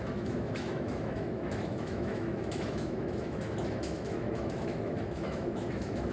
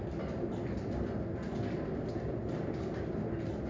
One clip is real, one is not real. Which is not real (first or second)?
first